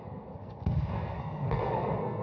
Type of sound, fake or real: fake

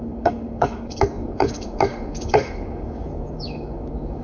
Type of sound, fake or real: fake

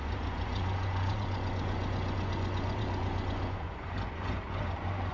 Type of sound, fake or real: fake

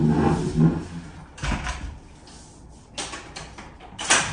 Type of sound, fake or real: real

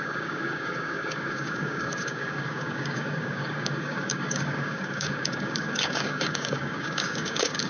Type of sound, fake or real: fake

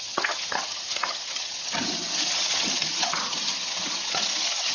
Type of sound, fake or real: fake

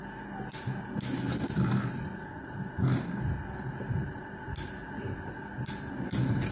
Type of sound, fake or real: real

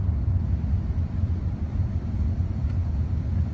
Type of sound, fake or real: real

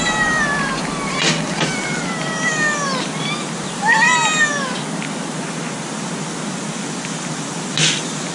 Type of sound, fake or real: real